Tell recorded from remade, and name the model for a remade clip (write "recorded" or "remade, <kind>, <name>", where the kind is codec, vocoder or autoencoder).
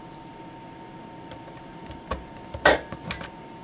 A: recorded